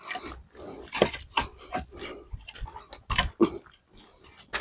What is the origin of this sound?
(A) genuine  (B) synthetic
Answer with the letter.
A